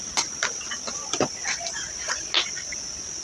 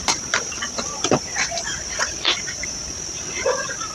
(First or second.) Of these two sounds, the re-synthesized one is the second